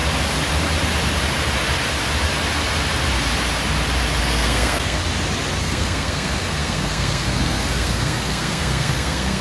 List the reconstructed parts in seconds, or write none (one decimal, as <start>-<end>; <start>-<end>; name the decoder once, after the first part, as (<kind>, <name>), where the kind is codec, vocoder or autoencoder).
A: 4.2-5.0 (codec, SNAC); 5.6-9.4